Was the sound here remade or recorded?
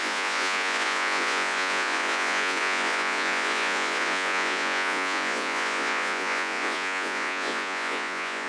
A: remade